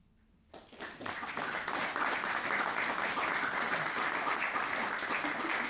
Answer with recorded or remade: recorded